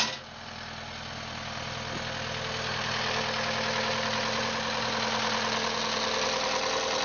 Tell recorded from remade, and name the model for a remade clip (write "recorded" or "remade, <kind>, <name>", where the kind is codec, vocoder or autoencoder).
recorded